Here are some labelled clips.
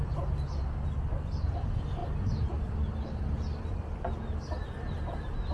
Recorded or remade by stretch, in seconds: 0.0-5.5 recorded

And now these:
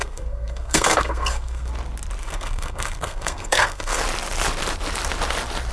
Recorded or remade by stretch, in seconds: 0.0-1.7 remade; 1.7-2.2 recorded; 2.2-4.0 remade; 4.0-5.7 recorded

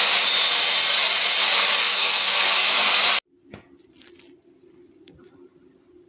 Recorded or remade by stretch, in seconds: 0.0-1.8 recorded; 1.8-3.0 remade; 3.0-6.1 recorded

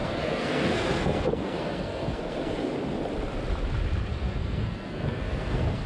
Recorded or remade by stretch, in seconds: 0.0-2.7 remade; 2.7-4.1 recorded; 4.1-5.9 remade

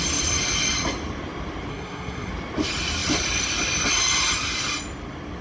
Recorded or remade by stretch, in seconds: 0.0-1.7 recorded; 1.7-2.3 remade; 2.3-5.4 recorded

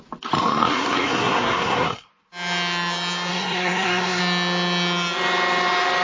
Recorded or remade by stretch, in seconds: 0.0-0.4 recorded; 0.4-2.1 remade; 2.1-3.3 recorded; 3.3-4.2 remade; 4.2-6.0 recorded